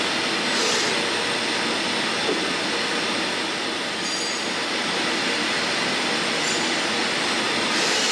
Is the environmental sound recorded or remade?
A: recorded